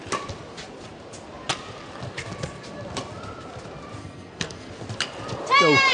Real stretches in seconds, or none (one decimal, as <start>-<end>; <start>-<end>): 0.0-4.0; 4.7-5.9